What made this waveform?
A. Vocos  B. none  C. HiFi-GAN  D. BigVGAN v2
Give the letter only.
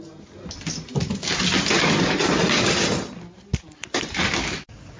B